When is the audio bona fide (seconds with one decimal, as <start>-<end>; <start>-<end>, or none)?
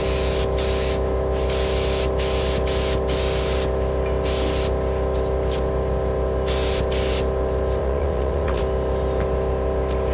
0.0-7.8; 8.6-10.1